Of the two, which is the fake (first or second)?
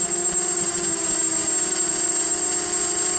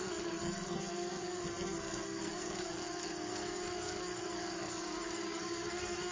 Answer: second